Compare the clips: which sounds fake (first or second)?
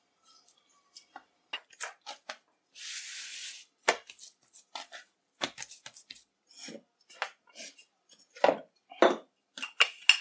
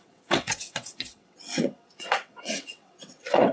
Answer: second